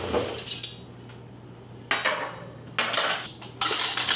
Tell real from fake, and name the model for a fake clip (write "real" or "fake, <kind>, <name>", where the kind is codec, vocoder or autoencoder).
real